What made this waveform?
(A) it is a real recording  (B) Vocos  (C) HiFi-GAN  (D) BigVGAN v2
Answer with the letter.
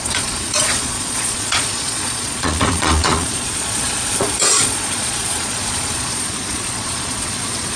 B